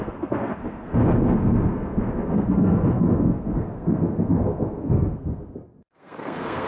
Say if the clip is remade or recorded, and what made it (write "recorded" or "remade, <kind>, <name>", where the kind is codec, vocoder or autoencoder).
remade, codec, SNAC